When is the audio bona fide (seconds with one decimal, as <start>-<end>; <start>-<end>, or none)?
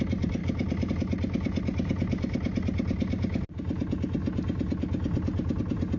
0.0-0.4; 0.9-6.0